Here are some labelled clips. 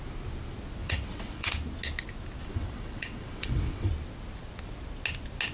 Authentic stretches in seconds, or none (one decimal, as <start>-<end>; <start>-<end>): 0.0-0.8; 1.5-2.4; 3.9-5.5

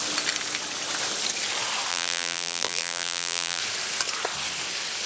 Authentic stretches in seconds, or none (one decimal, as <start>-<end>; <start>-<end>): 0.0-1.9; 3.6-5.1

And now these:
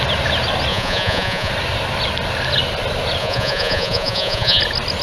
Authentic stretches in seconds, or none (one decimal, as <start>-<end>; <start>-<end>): 0.0-0.7; 1.5-3.2; 4.6-5.0

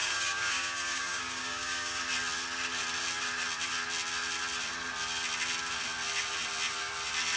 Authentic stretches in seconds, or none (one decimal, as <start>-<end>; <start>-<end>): 2.0-7.4